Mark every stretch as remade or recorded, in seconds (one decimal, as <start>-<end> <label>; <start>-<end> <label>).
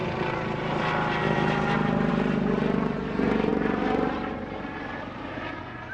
0.0-5.9 recorded